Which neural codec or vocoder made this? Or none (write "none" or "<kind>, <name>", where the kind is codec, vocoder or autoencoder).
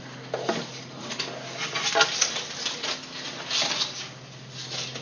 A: none